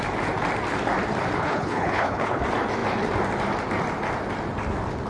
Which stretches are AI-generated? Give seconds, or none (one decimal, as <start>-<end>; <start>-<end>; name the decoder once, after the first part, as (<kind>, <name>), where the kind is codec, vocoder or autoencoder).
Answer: 1.4-2.4 (codec, HILCodec)